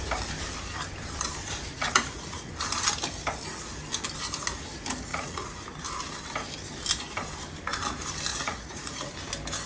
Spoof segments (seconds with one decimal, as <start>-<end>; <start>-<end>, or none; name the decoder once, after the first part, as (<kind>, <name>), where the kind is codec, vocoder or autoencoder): 1.7-2.5 (vocoder, Vocos); 5.1-5.6; 8.3-9.1